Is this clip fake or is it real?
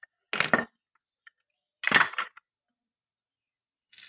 real